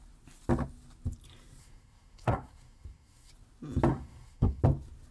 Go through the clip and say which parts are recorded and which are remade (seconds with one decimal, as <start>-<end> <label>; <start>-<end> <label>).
0.0-1.6 recorded; 1.6-3.3 remade; 3.3-3.9 recorded; 3.9-4.6 remade; 4.6-5.1 recorded